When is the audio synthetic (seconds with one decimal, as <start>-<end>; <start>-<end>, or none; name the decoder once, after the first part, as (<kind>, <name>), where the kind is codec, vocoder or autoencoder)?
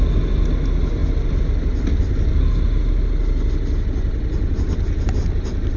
none